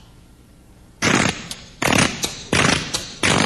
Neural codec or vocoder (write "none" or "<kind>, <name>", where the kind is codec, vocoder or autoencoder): vocoder, BigVGAN v2